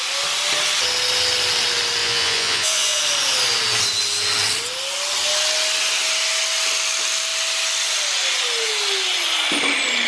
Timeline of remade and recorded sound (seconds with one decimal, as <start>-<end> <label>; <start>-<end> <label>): 0.0-2.0 recorded; 2.0-3.0 remade; 3.0-10.1 recorded